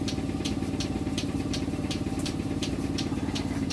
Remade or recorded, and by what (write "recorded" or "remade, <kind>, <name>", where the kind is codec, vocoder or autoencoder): remade, vocoder, BigVGAN v2